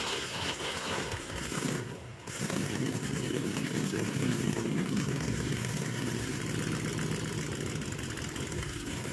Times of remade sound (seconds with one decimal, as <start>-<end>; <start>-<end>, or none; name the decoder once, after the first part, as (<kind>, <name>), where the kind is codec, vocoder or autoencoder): 0.0-6.4 (codec, SNAC); 8.5-9.1